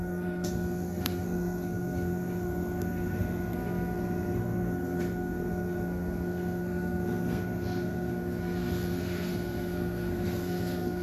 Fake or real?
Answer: fake